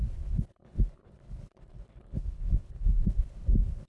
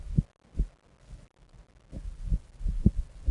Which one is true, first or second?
second